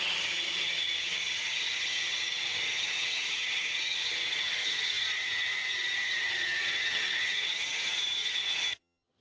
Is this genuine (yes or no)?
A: no